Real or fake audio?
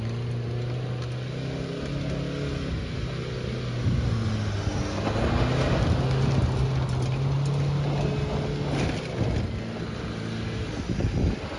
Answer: real